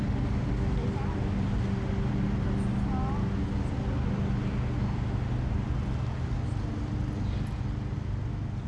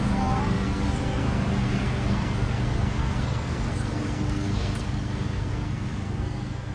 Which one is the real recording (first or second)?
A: first